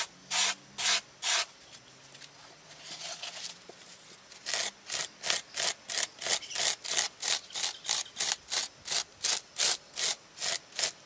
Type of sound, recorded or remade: recorded